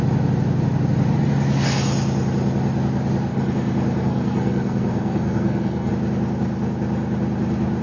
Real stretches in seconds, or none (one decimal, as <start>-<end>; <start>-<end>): 0.0-3.3; 5.9-7.8